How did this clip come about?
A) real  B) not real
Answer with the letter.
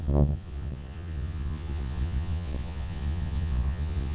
B